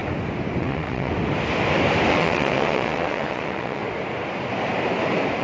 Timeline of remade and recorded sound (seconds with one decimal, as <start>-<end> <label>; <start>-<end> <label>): 0.0-0.6 recorded; 0.6-1.1 remade; 1.1-2.1 recorded; 2.1-3.8 remade; 3.8-5.4 recorded